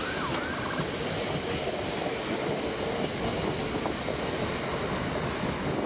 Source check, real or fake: real